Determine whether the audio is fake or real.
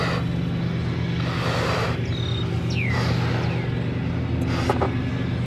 real